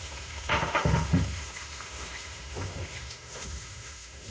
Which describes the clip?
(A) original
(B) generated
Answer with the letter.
B